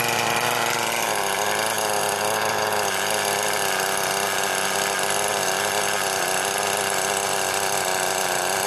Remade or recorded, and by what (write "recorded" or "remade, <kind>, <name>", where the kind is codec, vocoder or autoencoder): recorded